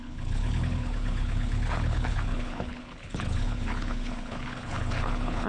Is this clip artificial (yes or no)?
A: yes